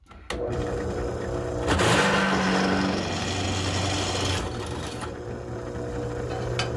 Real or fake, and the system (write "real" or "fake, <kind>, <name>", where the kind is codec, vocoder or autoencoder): real